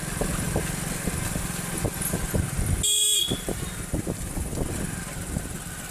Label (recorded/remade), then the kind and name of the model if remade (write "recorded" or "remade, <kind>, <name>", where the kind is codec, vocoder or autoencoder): recorded